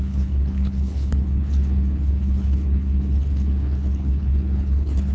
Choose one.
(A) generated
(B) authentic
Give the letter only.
A